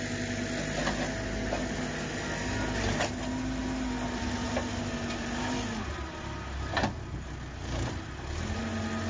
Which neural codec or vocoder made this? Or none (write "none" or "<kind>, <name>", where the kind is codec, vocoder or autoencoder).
none